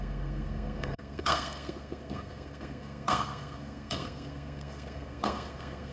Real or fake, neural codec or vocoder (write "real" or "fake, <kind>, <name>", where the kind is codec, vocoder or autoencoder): fake, codec, SNAC